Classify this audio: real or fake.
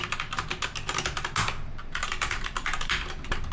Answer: real